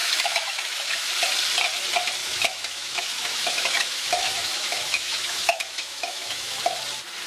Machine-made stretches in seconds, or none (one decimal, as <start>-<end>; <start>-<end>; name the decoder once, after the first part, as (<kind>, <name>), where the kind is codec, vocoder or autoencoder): 0.0-1.1 (autoencoder, DAC-VAE); 2.2-6.6